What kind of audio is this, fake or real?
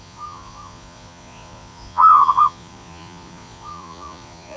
fake